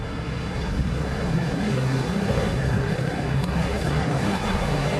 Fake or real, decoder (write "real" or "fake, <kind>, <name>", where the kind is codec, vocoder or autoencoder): fake, codec, SNAC